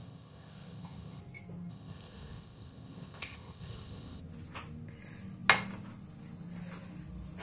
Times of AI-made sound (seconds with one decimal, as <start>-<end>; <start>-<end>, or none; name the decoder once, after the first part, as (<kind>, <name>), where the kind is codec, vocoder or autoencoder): 0.0-1.2 (codec, ZipCodec); 1.7-4.2